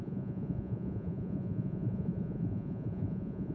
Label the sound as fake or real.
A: fake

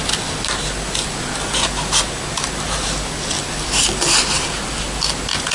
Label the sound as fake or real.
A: real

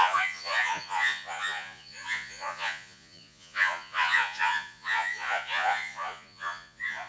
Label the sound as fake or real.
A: fake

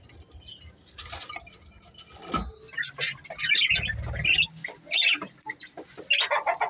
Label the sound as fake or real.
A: real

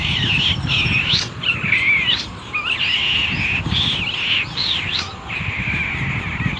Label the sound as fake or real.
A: real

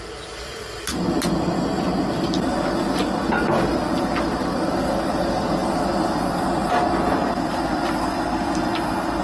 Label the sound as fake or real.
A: real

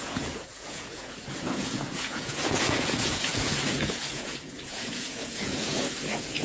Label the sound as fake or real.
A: fake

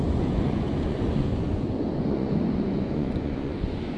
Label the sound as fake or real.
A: fake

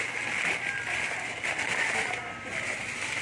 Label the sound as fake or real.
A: real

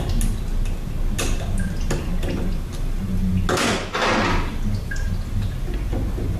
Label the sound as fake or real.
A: real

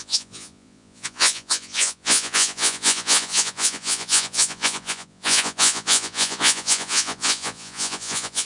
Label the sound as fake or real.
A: fake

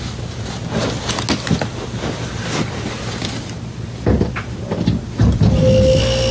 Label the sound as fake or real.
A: real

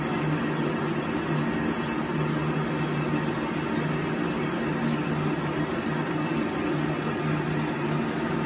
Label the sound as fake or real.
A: real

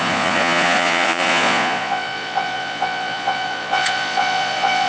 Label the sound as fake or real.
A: fake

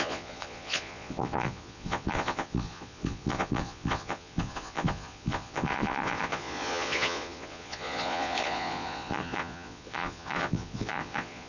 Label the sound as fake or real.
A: fake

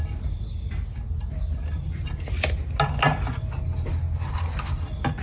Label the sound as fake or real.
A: real